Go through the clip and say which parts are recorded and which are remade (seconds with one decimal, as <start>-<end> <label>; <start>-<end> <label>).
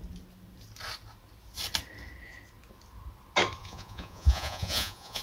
0.0-3.6 recorded; 3.6-5.2 remade